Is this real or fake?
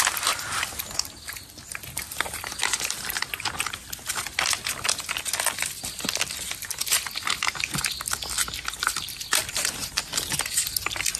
real